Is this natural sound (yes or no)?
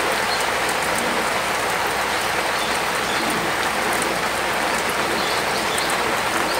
yes